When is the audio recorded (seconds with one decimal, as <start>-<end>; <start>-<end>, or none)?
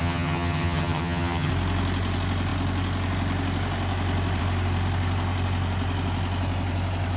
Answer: 1.5-7.2